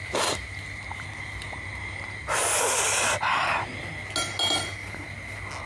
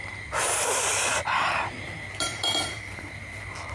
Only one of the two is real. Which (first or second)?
first